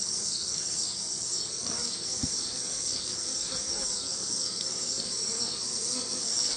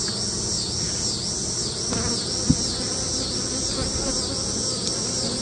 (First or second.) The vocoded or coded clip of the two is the first